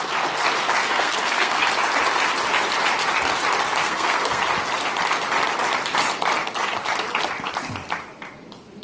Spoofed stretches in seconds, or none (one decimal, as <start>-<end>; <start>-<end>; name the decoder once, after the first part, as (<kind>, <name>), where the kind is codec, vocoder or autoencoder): 0.8-1.7 (codec, SNAC); 3.8-4.4